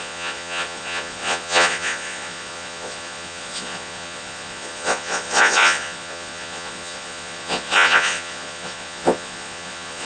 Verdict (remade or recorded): remade